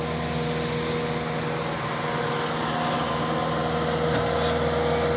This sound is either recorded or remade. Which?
recorded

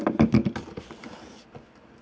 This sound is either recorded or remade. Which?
recorded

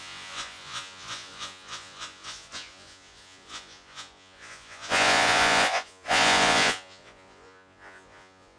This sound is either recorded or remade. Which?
remade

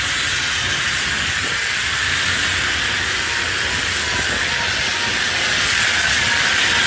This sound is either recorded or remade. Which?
recorded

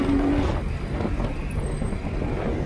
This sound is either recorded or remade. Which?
recorded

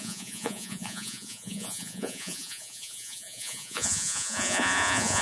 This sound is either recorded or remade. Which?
remade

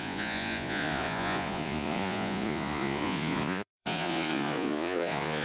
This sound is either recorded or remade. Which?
remade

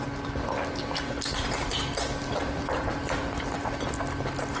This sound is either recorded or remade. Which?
recorded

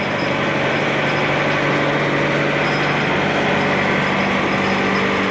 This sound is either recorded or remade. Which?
recorded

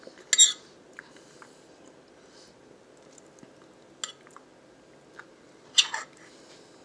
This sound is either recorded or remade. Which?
recorded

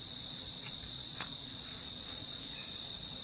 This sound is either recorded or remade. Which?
remade